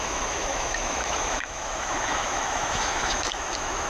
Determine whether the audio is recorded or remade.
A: remade